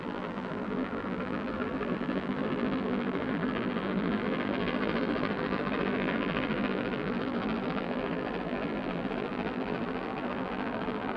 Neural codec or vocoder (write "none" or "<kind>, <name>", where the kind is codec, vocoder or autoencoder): vocoder, BigVGAN v2